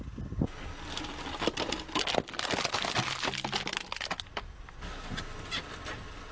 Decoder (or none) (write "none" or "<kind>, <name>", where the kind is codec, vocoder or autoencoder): none